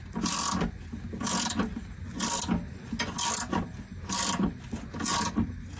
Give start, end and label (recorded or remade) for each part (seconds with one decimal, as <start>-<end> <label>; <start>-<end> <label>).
0.0-5.8 recorded